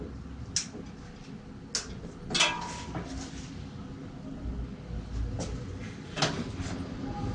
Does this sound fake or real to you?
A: real